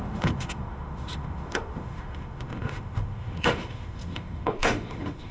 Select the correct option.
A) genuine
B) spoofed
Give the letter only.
B